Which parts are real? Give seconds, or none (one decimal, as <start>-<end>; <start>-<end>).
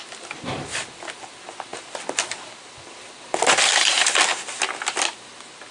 0.0-5.7